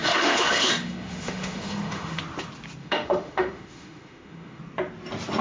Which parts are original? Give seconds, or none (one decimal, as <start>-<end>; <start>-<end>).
2.2-2.8; 4.6-5.4